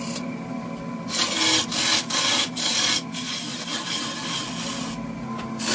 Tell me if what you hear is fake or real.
real